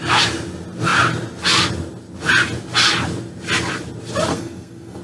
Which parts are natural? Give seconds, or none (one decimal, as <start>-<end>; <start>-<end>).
0.0-4.3